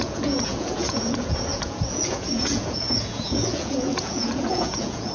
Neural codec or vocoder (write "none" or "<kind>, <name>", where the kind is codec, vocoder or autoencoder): vocoder, Vocos